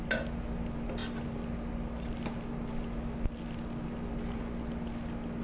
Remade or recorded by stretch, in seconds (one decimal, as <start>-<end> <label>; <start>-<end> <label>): 0.0-5.4 recorded